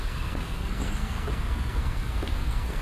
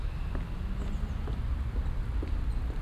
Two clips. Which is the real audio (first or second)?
second